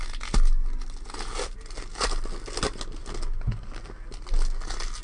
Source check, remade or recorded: recorded